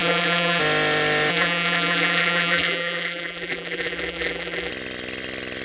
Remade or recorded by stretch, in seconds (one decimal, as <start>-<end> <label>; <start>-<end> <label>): 0.0-0.6 remade; 0.6-1.3 recorded; 1.3-4.7 remade; 4.7-5.6 recorded